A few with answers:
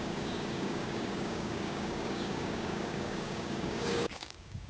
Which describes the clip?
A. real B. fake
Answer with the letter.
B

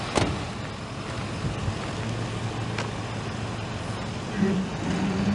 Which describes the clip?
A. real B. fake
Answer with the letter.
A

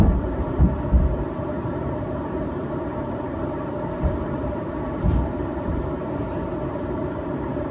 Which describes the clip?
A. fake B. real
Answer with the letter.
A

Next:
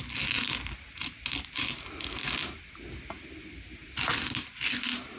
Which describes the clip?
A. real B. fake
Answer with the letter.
A